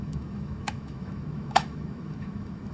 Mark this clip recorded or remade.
remade